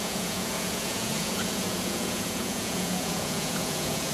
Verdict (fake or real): fake